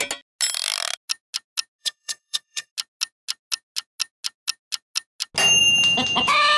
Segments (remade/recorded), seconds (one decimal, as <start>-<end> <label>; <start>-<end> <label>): 0.0-1.8 recorded; 1.8-2.7 remade; 2.7-6.6 recorded